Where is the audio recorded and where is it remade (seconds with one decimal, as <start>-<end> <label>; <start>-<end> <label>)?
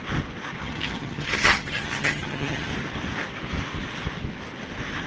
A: 0.0-0.6 recorded; 0.6-2.7 remade; 2.7-5.1 recorded